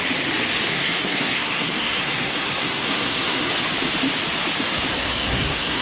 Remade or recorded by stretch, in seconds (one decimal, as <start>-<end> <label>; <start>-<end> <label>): 0.0-0.7 recorded; 0.7-3.5 remade; 3.5-4.9 recorded; 4.9-5.8 remade